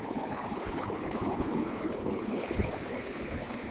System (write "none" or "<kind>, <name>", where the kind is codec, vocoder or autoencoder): codec, HILCodec